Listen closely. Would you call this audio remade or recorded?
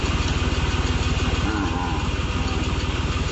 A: recorded